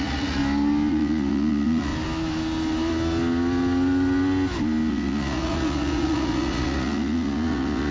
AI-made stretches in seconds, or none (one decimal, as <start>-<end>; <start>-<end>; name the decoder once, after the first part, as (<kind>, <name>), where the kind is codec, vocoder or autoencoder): 0.0-0.4 (vocoder, Vocos); 0.9-1.9; 4.9-7.9